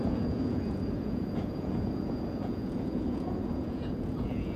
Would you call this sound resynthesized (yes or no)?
yes